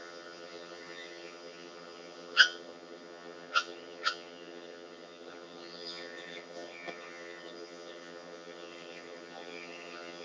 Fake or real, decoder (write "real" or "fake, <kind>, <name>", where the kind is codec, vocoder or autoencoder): fake, vocoder, HiFi-GAN